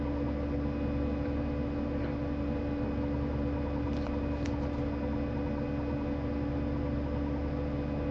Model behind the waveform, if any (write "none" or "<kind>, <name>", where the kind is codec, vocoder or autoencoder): none